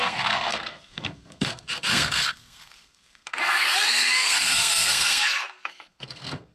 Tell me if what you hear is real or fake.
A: fake